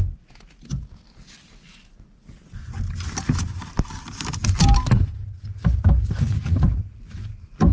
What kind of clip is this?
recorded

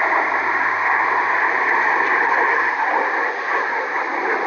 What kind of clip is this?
recorded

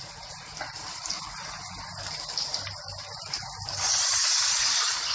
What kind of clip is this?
recorded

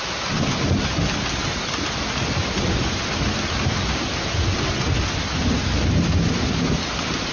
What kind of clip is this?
recorded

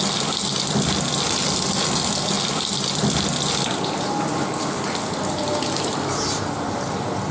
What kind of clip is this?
recorded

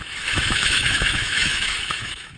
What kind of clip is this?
remade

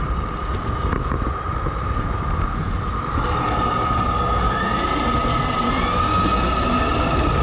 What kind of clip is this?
recorded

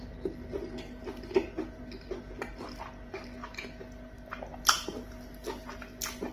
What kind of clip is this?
recorded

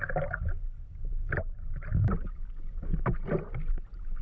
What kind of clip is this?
recorded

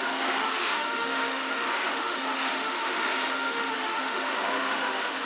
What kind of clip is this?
remade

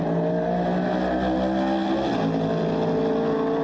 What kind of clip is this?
recorded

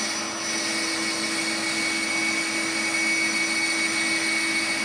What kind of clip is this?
recorded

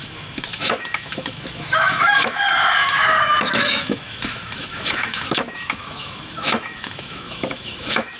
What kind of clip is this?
remade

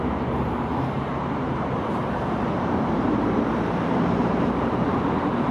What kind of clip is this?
remade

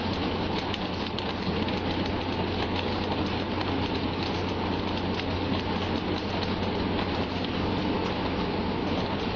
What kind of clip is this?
recorded